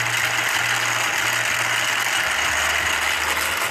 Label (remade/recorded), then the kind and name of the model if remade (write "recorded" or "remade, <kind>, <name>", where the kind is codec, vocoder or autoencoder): recorded